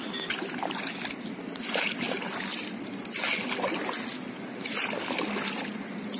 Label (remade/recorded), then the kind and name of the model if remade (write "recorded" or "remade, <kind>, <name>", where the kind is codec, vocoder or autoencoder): recorded